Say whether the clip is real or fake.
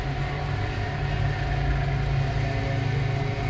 real